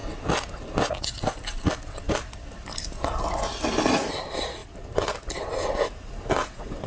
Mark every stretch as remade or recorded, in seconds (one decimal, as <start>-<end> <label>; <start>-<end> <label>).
0.0-6.9 recorded